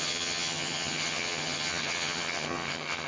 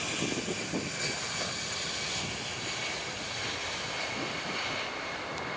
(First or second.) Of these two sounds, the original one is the second